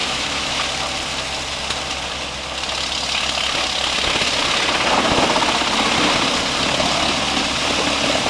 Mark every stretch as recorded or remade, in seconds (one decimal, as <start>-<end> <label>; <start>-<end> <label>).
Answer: 0.0-0.6 remade; 0.6-8.3 recorded